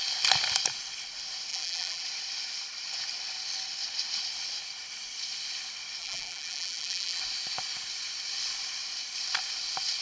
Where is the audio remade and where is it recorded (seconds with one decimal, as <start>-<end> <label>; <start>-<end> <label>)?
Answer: 0.0-1.5 recorded; 1.5-2.0 remade; 2.0-6.0 recorded; 6.0-7.2 remade; 7.2-10.0 recorded